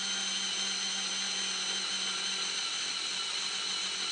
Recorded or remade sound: recorded